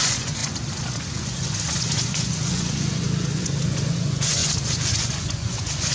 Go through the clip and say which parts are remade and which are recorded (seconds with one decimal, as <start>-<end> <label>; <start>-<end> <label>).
0.0-5.9 remade